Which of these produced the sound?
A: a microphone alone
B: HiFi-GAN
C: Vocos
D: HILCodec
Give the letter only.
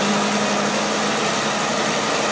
A